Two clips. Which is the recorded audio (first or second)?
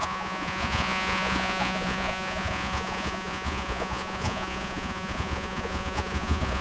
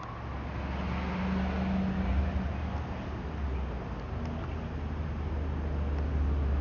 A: second